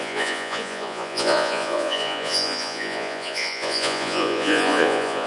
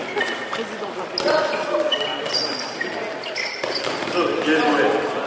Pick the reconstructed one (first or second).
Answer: first